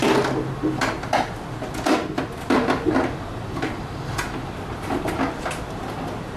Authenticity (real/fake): real